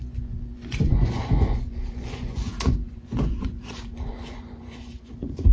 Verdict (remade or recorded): remade